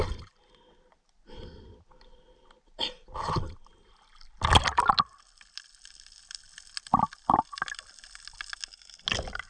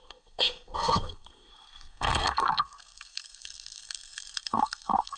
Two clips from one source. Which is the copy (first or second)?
second